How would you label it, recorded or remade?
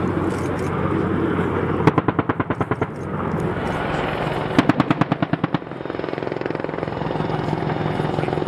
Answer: recorded